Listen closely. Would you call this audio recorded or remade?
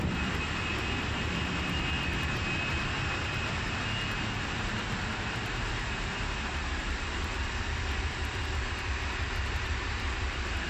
remade